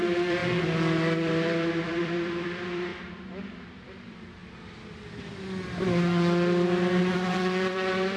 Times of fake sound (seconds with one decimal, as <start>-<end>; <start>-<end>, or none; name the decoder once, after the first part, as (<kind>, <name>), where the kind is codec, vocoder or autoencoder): 0.0-0.4 (vocoder, BigVGAN v2); 1.3-4.4; 7.0-8.2